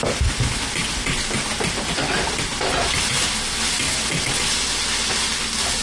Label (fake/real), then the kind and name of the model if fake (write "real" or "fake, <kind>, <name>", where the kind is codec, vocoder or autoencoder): real